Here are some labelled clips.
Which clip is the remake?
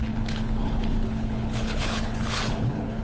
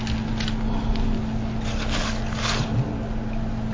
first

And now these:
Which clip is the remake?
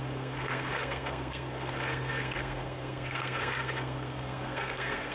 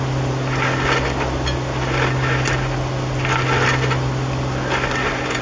first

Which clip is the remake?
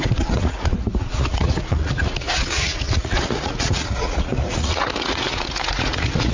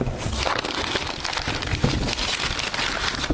first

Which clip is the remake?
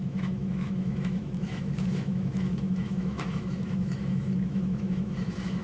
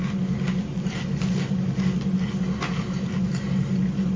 first